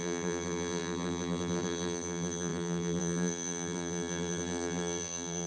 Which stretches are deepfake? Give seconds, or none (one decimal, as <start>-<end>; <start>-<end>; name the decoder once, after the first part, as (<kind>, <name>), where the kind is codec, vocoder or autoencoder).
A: 0.0-5.5 (vocoder, BigVGAN v2)